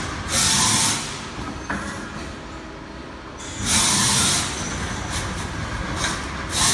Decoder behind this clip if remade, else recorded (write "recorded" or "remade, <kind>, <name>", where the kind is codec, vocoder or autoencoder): recorded